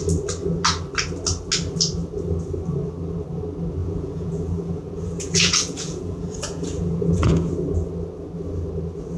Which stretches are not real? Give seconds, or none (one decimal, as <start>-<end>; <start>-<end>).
3.8-7.5

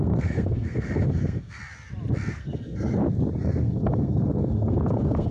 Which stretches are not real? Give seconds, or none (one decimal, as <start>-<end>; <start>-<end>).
0.0-1.6; 2.3-3.0; 3.5-5.3

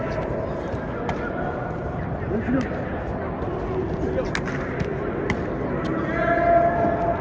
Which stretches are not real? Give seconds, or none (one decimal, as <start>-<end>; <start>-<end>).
none

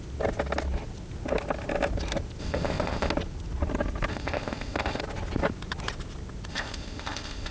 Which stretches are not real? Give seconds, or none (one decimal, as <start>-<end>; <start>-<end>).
2.4-3.1; 4.1-5.0; 6.5-7.5

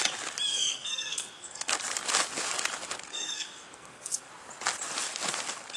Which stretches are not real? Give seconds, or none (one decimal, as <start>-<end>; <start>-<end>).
0.5-1.7; 3.1-4.3

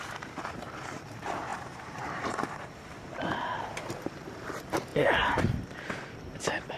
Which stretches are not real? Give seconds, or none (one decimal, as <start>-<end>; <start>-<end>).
0.0-6.8

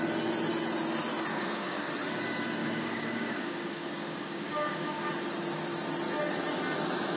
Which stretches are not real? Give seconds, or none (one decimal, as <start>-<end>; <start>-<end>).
1.3-1.9; 2.6-5.1